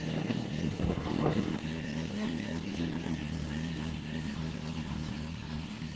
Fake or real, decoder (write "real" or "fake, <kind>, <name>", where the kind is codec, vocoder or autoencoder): fake, codec, SNAC